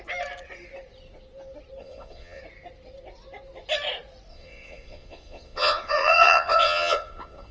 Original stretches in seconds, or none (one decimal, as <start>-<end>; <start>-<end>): 0.0-1.8; 2.4-4.3